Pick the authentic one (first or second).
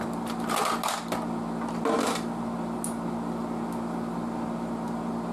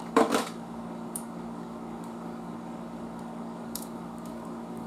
first